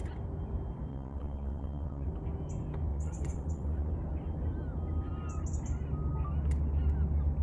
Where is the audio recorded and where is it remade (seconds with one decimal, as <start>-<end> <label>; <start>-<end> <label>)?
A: 0.0-0.9 recorded; 0.9-2.1 remade; 2.1-2.9 recorded; 2.9-3.9 remade; 3.9-7.4 recorded